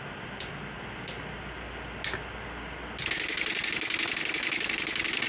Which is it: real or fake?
real